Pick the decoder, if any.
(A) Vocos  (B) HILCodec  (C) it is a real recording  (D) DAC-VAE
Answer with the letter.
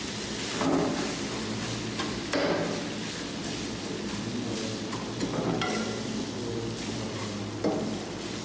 C